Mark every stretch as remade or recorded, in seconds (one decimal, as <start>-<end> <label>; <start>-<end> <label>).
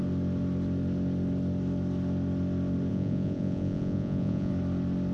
0.0-2.9 recorded; 2.9-4.5 remade; 4.5-5.1 recorded